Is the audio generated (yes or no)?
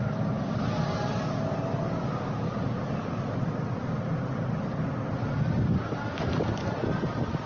no